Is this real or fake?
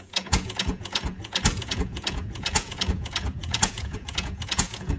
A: fake